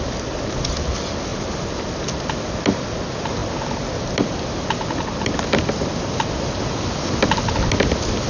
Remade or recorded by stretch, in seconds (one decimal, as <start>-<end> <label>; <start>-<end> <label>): 0.0-8.3 recorded